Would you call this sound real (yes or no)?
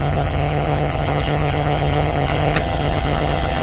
no